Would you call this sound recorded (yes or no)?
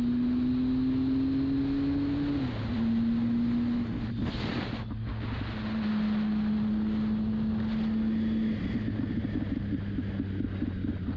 yes